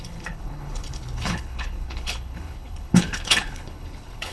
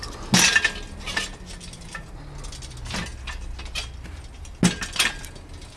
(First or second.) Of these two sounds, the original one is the second